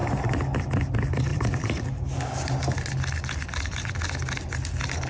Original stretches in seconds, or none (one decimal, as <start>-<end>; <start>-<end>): 0.0-1.3; 4.4-5.1